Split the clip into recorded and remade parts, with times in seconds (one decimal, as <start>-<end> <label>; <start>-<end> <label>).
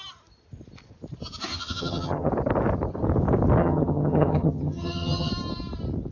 0.0-1.5 recorded; 1.5-2.3 remade; 2.3-3.6 recorded; 3.6-5.3 remade; 5.3-6.1 recorded